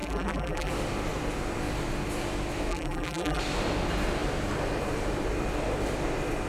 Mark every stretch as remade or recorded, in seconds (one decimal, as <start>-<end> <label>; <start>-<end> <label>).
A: 0.0-0.7 remade; 0.7-2.7 recorded; 2.7-3.4 remade; 3.4-6.5 recorded